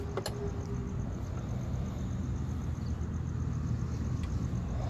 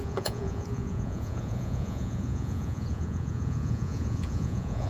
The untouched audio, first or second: first